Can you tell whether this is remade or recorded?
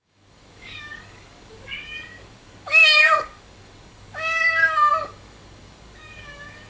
remade